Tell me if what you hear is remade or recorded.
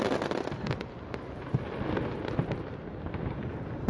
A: recorded